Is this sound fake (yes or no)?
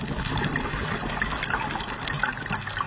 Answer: no